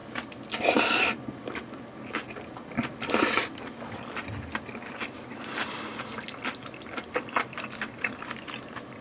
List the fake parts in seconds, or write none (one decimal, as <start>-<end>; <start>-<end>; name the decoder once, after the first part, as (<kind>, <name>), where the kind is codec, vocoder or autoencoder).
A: 3.1-9.0 (vocoder, BigVGAN v2)